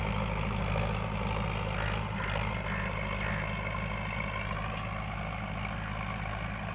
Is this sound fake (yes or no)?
no